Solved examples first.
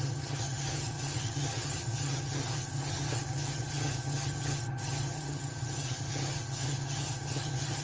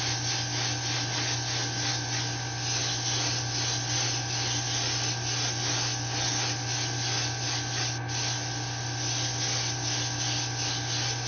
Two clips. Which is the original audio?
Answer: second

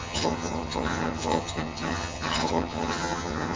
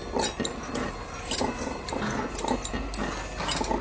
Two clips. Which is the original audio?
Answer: second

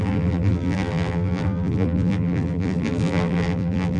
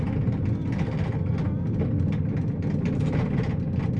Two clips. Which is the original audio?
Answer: second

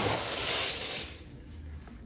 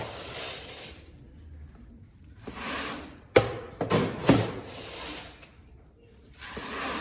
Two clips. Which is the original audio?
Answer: second